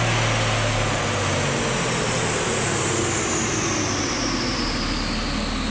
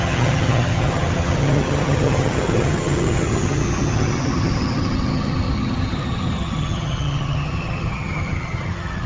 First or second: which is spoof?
second